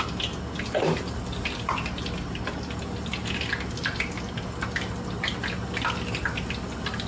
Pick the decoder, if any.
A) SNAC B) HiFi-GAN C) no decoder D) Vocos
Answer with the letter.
C